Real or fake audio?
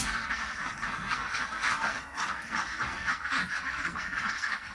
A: fake